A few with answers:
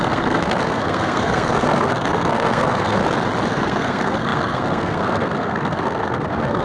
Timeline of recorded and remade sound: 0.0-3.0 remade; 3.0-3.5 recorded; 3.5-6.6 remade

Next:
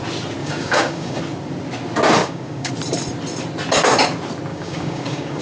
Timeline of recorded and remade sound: 0.0-0.4 recorded; 0.4-1.2 remade; 1.2-2.2 recorded; 2.2-2.7 remade; 2.7-4.5 recorded; 4.5-5.4 remade

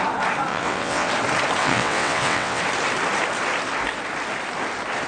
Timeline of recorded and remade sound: 0.0-0.5 recorded; 0.5-1.1 remade; 1.1-1.6 recorded; 1.6-2.6 remade; 2.6-5.1 recorded